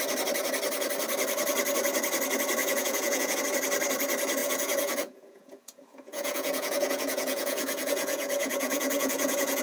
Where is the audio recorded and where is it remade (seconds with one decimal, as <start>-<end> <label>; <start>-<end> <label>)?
0.0-2.6 recorded; 2.6-3.4 remade; 3.4-4.4 recorded; 4.4-9.6 remade